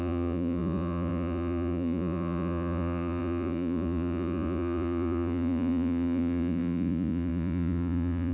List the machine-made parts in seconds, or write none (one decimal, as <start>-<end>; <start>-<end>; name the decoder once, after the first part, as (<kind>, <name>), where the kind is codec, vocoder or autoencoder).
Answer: 0.0-8.3 (vocoder, Vocos)